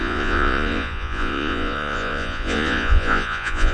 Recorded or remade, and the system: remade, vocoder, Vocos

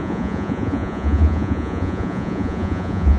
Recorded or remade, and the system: remade, vocoder, Vocos